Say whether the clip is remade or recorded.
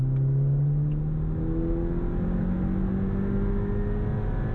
recorded